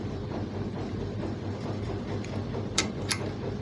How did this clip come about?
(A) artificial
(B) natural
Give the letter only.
A